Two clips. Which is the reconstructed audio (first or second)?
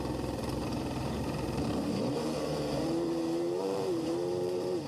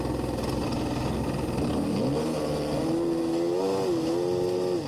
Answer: first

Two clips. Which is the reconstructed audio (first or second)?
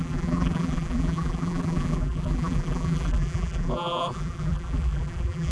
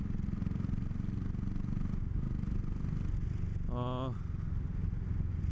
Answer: first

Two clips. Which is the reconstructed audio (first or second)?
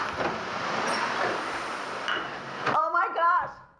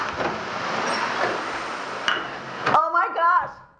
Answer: first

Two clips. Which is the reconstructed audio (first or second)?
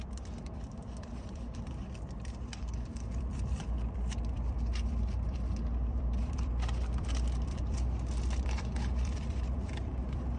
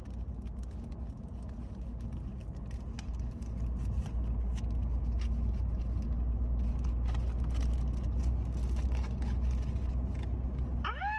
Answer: first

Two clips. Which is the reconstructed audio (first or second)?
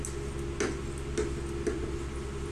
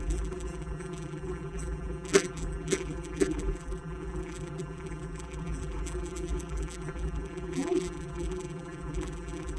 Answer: second